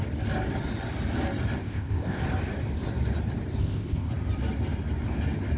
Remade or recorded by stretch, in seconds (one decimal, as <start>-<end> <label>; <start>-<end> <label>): 0.0-1.6 recorded; 1.6-2.2 remade; 2.2-3.6 recorded; 3.6-4.1 remade; 4.1-5.6 recorded